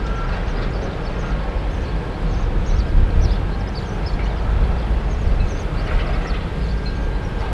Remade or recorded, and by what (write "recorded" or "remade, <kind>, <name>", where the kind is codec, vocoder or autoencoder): recorded